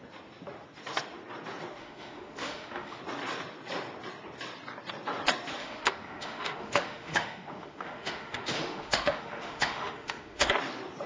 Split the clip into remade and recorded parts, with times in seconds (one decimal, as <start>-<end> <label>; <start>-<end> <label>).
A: 0.0-1.8 recorded; 1.8-3.0 remade; 3.0-5.6 recorded; 5.6-10.5 remade; 10.5-11.1 recorded